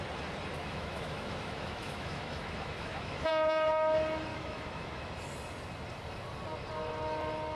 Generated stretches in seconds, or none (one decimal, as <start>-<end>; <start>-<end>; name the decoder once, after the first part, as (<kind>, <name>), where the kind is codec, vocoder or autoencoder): 0.6-3.3 (autoencoder, DAC-VAE); 4.3-5.1